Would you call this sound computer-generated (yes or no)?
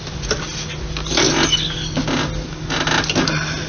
no